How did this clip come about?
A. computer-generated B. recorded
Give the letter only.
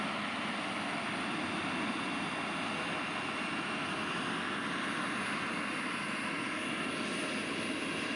B